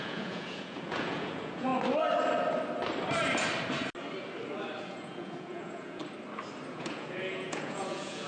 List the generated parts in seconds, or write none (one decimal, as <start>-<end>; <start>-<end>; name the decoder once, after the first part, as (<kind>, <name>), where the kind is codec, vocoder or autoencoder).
0.0-1.7 (vocoder, Vocos); 4.8-6.0; 6.7-8.3